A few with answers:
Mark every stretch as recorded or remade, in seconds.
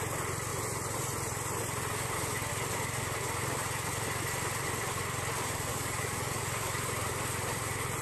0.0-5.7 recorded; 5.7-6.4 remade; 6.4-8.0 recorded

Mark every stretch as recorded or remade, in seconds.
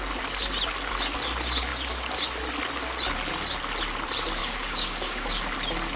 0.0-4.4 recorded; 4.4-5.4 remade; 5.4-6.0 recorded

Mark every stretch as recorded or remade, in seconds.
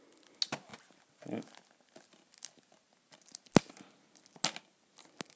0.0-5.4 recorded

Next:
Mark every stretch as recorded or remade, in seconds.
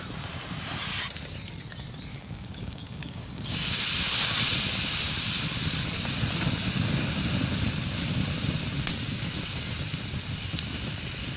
0.0-2.1 recorded; 2.1-3.8 remade; 3.8-11.4 recorded